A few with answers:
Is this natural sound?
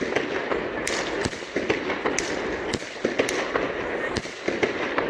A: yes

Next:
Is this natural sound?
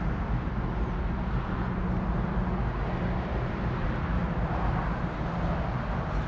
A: yes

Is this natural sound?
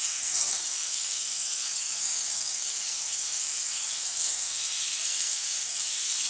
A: no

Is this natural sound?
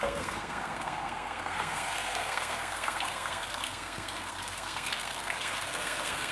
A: no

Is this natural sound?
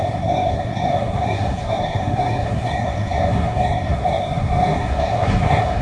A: no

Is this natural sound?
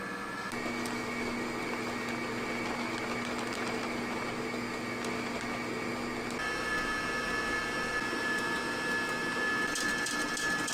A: yes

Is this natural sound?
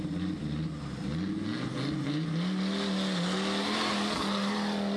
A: yes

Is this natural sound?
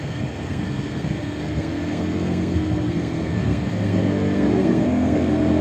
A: no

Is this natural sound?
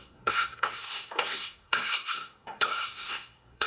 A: no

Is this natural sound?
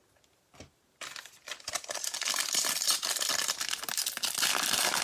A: yes